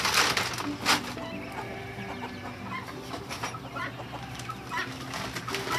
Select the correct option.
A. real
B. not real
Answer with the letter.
A